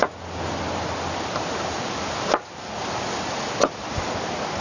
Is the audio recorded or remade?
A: recorded